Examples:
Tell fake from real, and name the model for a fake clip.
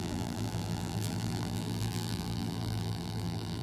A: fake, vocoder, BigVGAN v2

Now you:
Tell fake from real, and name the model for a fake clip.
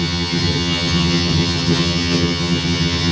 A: fake, vocoder, HiFi-GAN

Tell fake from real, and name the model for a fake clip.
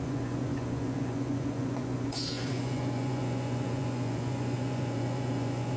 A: fake, vocoder, Vocos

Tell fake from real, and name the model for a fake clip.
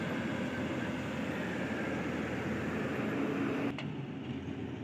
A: real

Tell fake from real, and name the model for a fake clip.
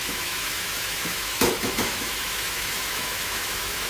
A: fake, autoencoder, DAC-VAE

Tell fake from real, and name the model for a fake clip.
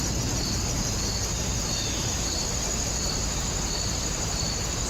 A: fake, vocoder, BigVGAN v2